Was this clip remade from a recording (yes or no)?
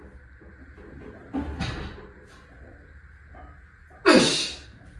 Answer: no